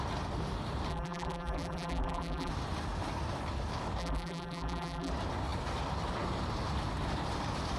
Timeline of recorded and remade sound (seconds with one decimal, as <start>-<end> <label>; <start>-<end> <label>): 0.0-0.9 recorded; 0.9-2.5 remade; 2.5-4.0 recorded; 4.0-5.1 remade; 5.1-7.8 recorded